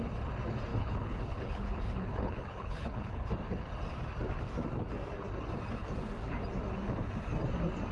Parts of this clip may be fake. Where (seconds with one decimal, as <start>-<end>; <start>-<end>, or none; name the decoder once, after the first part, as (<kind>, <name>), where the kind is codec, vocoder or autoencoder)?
0.7-3.3 (codec, HILCodec)